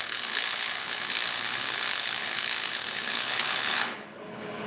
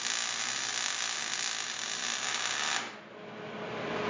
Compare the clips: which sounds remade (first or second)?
first